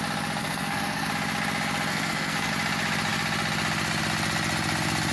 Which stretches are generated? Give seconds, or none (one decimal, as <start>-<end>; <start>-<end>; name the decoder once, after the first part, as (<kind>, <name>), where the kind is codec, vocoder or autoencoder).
0.4-1.1 (codec, SNAC); 1.9-2.5